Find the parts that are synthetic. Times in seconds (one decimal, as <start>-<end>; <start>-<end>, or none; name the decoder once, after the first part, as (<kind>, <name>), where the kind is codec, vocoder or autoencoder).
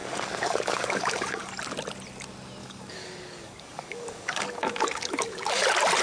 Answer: 0.0-1.5 (codec, DAC); 2.6-5.6